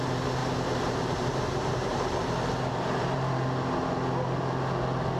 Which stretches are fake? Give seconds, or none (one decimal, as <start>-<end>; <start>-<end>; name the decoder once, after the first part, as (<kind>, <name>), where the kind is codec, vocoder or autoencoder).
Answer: 0.4-3.3 (vocoder, BigVGAN v2)